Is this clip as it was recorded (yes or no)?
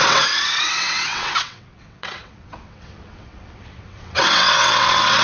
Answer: no